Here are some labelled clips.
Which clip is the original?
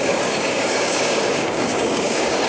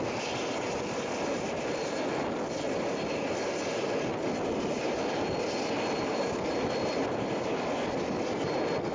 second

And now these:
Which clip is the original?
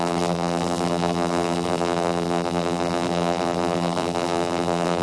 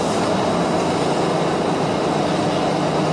second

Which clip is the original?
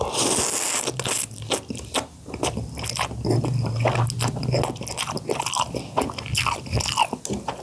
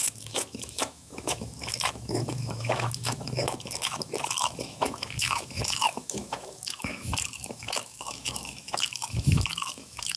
first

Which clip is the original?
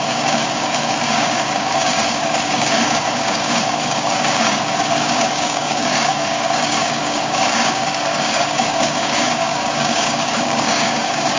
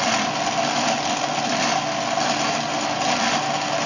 second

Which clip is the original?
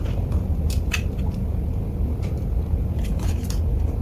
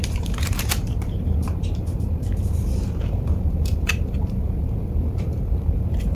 first